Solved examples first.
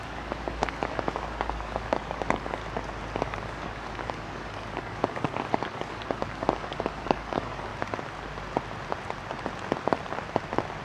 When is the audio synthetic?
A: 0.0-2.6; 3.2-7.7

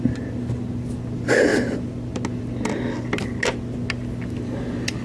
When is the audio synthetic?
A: none

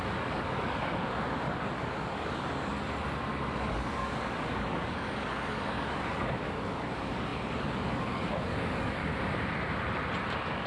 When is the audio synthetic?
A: 0.0-2.7; 3.3-9.0

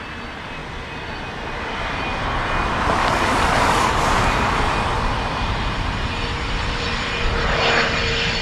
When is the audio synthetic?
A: 3.0-4.0

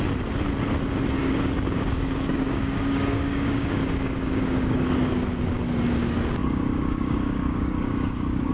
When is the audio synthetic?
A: 1.2-5.1; 6.4-8.5

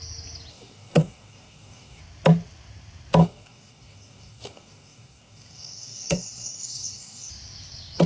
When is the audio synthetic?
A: 0.5-2.0; 3.2-7.3

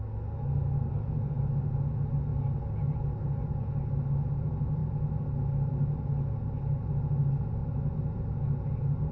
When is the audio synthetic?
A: none